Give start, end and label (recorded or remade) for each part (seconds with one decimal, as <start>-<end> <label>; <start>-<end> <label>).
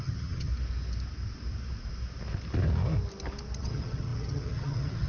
0.0-0.5 remade; 0.5-3.6 recorded; 3.6-5.1 remade